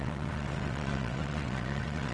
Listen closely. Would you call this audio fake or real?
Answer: fake